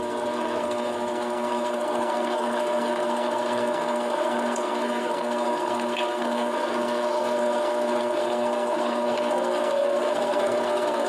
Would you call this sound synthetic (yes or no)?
yes